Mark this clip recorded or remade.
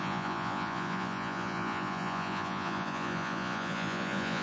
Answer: remade